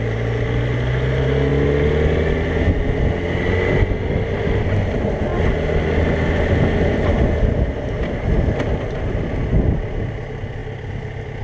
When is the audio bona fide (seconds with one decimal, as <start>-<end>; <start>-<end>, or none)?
0.0-11.4